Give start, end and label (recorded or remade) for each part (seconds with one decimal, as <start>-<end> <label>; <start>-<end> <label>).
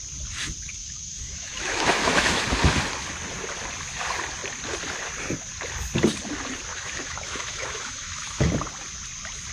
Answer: 0.0-0.8 recorded; 0.8-2.4 remade; 2.4-6.7 recorded; 6.7-8.5 remade; 8.5-9.5 recorded